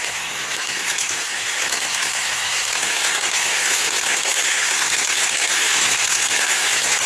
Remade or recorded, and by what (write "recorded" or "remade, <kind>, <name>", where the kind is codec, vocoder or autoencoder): remade, codec, SNAC